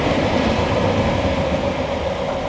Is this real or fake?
real